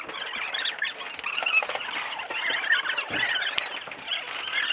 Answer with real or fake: real